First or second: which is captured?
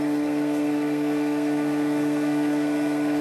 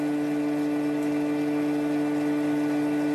second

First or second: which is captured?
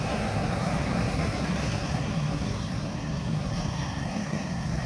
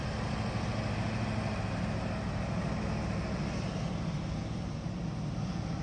second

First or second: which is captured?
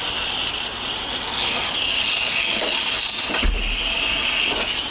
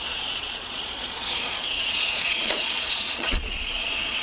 first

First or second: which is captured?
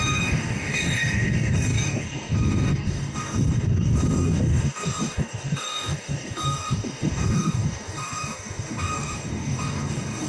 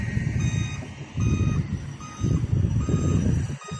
second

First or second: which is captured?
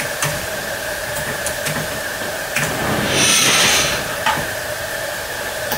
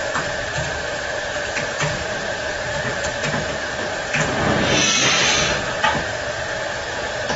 second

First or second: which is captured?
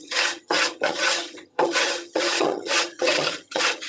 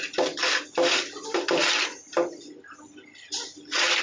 second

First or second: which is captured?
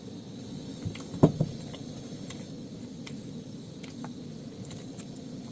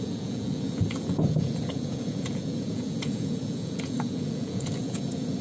first